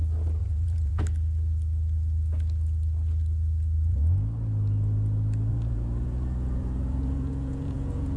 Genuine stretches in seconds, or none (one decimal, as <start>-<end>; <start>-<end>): 0.0-0.4; 1.0-5.5